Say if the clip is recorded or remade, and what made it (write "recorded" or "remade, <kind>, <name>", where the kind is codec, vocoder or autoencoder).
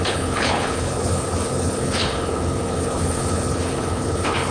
remade, codec, HILCodec